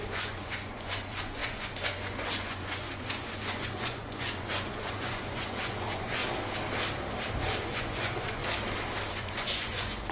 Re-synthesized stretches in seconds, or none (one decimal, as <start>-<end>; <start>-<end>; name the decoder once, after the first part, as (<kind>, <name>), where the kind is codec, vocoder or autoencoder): 0.0-6.2 (vocoder, Vocos); 7.4-8.4; 9.1-10.1